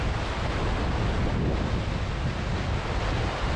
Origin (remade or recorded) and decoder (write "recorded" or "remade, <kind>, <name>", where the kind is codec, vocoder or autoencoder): recorded